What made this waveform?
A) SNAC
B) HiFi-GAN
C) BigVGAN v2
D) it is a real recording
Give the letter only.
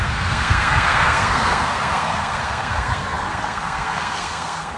A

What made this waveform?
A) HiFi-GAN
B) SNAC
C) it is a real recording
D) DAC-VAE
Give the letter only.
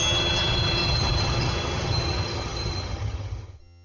A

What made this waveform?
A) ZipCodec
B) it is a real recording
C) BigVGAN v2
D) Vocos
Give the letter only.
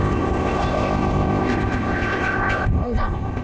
A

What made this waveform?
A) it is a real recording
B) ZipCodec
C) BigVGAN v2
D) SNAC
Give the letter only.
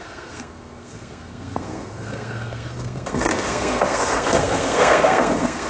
D